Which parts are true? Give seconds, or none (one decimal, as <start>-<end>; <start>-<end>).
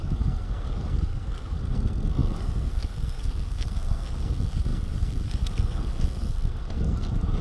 none